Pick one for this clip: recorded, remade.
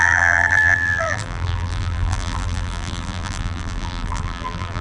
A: remade